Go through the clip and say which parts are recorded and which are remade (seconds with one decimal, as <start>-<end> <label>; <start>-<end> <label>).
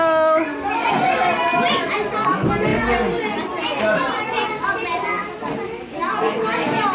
0.0-6.9 recorded